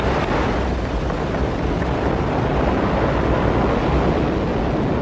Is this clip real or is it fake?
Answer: real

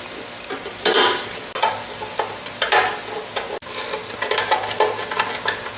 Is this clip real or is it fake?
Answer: real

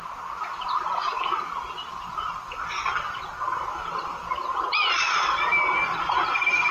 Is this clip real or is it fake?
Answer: real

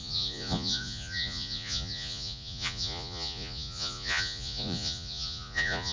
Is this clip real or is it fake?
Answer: fake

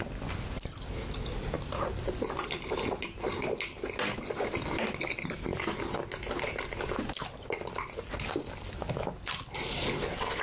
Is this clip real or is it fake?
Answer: real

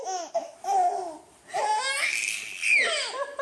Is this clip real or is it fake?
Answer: real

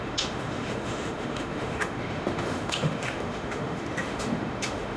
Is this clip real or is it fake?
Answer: fake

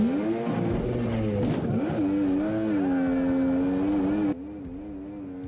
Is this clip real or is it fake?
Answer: real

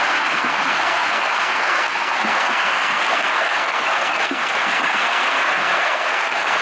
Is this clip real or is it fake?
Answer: fake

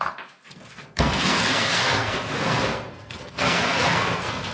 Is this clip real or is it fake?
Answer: fake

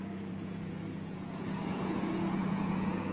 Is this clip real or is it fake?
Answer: fake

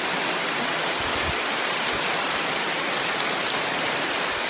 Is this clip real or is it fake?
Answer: real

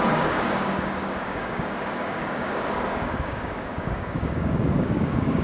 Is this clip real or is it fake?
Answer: fake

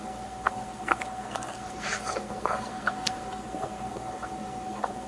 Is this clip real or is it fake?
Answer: fake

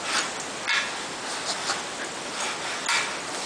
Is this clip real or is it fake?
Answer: real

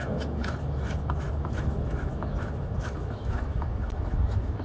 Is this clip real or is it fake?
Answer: fake